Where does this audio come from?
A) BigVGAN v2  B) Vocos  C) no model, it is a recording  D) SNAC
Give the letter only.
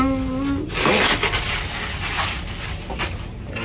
C